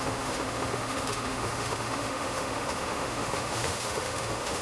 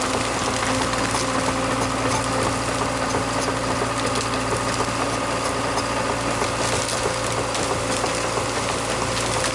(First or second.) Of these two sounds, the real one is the second